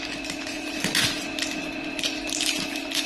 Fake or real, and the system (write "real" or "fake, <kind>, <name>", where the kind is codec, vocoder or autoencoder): real